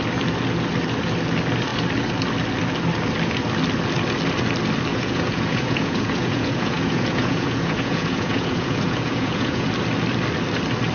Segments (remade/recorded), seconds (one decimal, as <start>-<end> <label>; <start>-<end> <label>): 0.0-4.9 recorded; 4.9-9.7 remade; 9.7-10.9 recorded